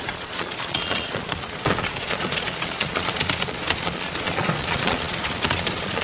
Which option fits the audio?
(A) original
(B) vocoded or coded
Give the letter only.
B